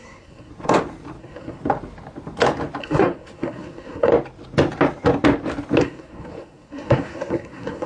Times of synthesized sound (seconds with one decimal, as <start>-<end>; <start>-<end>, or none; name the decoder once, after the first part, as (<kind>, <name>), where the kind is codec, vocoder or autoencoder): 0.0-0.5 (codec, SNAC); 1.2-1.6; 2.8-4.1; 5.8-7.9